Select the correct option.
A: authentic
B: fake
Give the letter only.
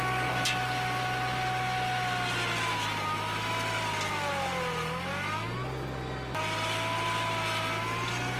A